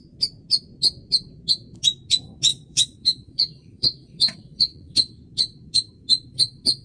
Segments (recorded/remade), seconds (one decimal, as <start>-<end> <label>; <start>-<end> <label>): 0.0-2.5 recorded; 2.5-4.9 remade; 4.9-6.8 recorded